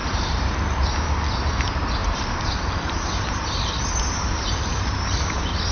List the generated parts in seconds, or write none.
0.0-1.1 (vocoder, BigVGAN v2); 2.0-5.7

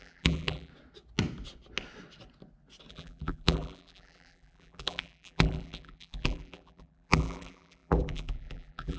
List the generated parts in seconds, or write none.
0.0-0.7 (vocoder, BigVGAN v2); 2.9-9.0

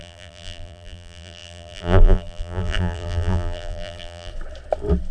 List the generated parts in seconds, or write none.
0.0-4.3 (vocoder, BigVGAN v2)